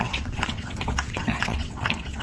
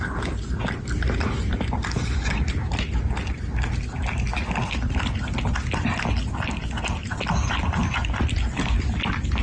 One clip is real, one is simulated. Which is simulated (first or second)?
first